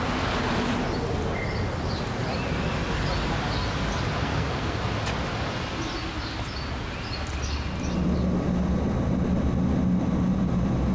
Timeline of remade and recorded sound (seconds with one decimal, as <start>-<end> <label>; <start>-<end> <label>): 0.0-4.2 recorded; 4.2-4.8 remade; 4.8-10.9 recorded